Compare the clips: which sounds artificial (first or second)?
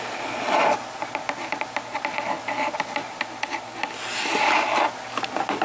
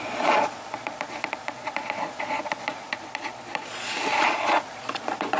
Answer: second